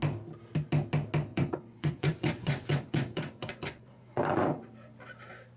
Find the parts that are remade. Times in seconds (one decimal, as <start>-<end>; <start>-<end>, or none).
1.3-4.7